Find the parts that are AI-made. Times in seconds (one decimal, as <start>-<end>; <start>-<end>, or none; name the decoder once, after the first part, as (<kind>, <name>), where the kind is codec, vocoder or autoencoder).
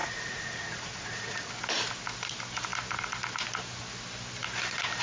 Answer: 0.0-1.5 (vocoder, Vocos)